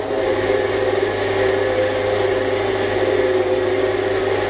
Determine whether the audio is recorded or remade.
recorded